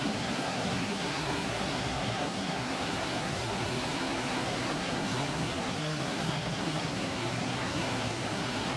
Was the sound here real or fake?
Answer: fake